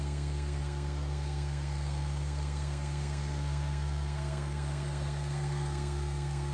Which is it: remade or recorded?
remade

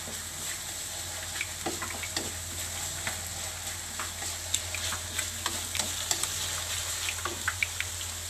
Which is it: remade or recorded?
recorded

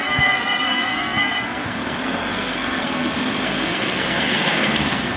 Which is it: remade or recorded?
remade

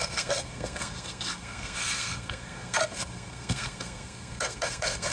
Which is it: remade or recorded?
remade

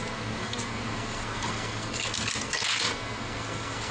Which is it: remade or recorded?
remade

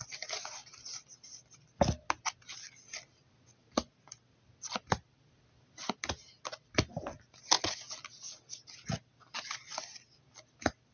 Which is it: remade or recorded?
recorded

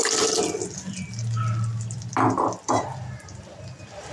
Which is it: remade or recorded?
recorded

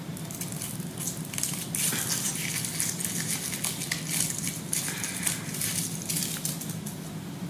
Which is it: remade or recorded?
recorded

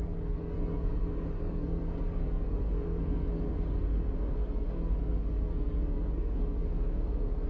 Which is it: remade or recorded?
remade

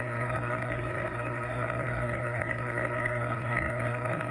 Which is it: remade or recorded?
remade